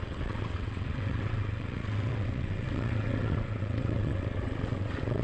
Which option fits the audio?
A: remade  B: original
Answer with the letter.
A